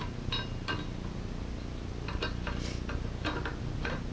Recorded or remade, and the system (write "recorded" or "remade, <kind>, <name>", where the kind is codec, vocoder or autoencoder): recorded